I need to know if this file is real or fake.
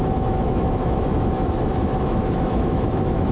fake